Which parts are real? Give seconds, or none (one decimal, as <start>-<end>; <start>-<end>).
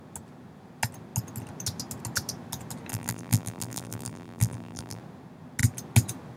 0.0-2.9; 5.0-6.4